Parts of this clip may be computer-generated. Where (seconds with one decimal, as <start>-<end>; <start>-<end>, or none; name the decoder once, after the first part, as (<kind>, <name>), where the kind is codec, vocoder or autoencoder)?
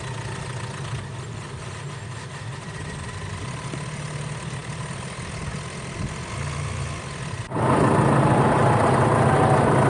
none